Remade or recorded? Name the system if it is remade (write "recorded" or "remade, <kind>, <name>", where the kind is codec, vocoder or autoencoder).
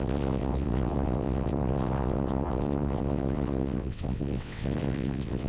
remade, vocoder, WaveNeXt